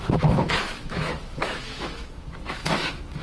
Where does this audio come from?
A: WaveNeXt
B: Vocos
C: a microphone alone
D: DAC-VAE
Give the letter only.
D